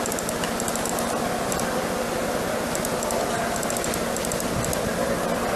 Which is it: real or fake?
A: real